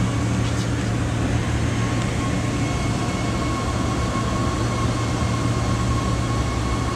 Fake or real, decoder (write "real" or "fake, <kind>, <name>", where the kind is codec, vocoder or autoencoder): real